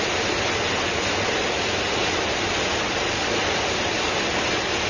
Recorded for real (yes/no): yes